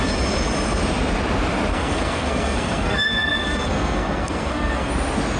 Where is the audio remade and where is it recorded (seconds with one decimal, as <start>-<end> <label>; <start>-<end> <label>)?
0.0-1.7 recorded; 1.7-4.9 remade; 4.9-5.4 recorded

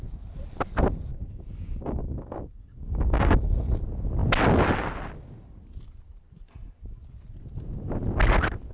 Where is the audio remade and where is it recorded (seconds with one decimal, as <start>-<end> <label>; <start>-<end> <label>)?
0.0-1.1 recorded; 1.1-3.7 remade; 3.7-8.7 recorded

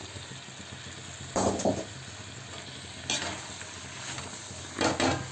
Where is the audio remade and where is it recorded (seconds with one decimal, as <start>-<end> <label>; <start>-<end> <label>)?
0.0-5.3 recorded

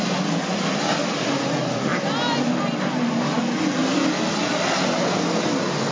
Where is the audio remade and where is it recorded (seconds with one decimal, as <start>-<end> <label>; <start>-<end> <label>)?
0.0-5.9 recorded

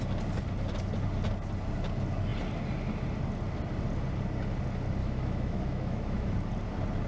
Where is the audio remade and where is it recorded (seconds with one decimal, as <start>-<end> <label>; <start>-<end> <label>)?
0.0-5.0 recorded; 5.0-6.3 remade; 6.3-7.1 recorded